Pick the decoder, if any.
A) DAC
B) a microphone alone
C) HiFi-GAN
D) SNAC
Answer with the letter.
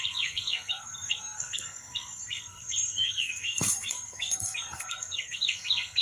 D